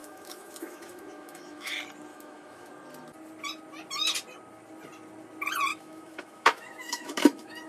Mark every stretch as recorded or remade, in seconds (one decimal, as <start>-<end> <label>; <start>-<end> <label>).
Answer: 0.0-1.7 remade; 1.7-2.1 recorded; 2.1-2.7 remade; 2.7-5.7 recorded; 5.7-7.7 remade

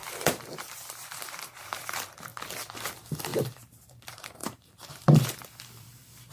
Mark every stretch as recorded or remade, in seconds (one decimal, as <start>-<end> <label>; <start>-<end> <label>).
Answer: 0.0-2.3 remade; 2.3-2.9 recorded; 2.9-6.3 remade